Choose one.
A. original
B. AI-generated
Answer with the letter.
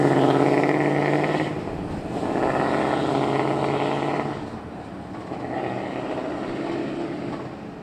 A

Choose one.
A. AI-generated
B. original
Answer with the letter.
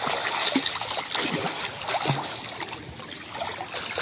B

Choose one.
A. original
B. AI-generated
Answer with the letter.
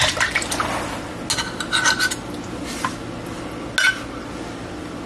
A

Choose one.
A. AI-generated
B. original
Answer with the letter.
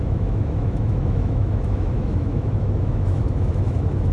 A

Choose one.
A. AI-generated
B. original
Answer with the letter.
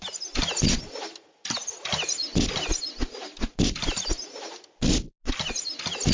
B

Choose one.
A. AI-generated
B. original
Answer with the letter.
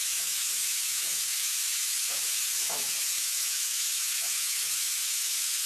A